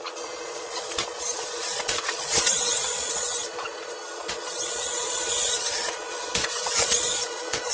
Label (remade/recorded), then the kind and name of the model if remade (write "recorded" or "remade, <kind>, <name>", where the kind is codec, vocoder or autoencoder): remade, vocoder, Vocos